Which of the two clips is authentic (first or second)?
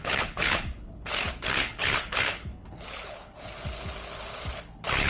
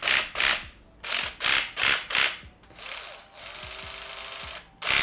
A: second